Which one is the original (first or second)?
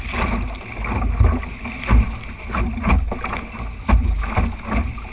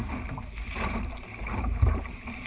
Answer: first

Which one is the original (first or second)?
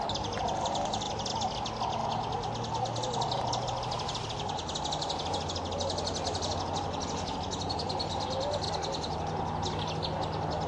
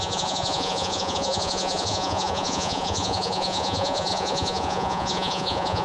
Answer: first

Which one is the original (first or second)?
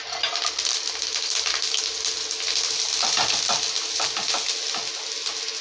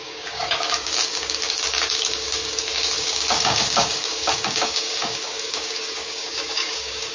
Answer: first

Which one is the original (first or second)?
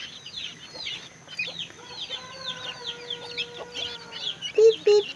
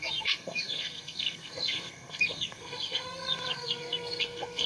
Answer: first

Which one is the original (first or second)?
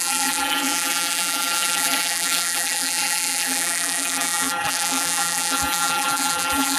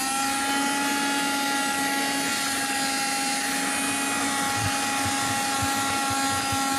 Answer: second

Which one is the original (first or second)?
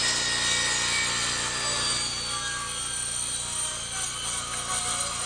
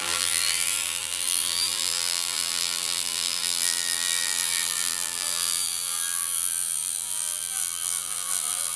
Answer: first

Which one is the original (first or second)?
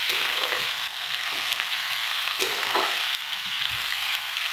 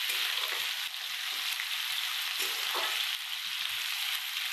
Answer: second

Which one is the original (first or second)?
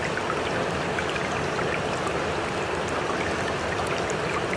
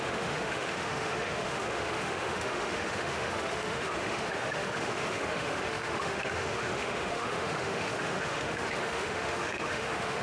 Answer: first